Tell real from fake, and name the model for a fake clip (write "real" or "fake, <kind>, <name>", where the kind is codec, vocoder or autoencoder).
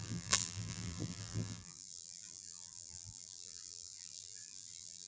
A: fake, vocoder, BigVGAN v2